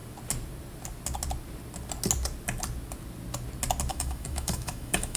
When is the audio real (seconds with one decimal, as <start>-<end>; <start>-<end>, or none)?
0.0-3.9